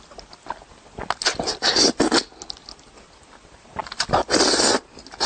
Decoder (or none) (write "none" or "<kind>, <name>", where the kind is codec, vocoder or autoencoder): none